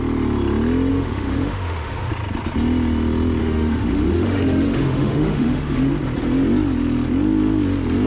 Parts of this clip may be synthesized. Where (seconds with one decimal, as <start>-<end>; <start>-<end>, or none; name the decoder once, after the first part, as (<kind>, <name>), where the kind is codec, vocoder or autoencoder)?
0.9-2.1 (autoencoder, DAC-VAE); 3.4-5.9